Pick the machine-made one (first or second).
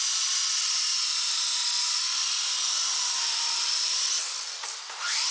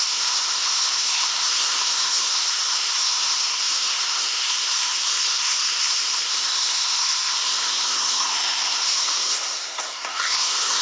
second